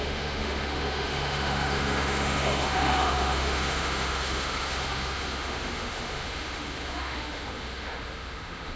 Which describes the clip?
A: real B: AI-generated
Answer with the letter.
B